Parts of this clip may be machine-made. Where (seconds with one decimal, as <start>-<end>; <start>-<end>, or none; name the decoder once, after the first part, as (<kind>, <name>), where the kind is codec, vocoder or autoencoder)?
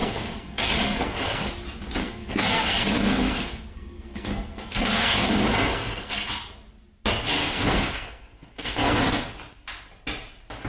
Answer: 0.0-1.5 (codec, SNAC); 2.0-6.3; 7.4-9.0